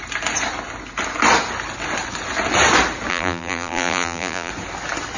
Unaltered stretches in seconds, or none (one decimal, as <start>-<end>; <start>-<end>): 0.0-3.1; 4.5-5.2